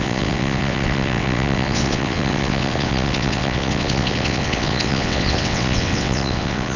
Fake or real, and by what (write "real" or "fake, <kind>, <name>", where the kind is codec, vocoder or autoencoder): fake, vocoder, WaveNeXt